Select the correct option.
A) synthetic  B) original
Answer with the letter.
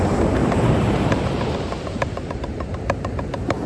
A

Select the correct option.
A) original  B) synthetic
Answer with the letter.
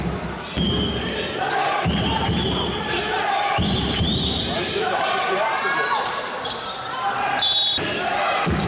B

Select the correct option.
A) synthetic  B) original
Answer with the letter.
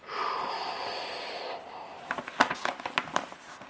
B